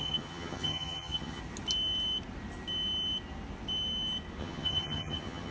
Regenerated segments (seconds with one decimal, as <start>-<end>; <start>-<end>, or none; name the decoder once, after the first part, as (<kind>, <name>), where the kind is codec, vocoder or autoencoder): 0.0-1.4 (vocoder, HiFi-GAN); 4.4-5.5